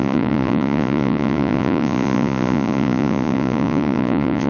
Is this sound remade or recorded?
remade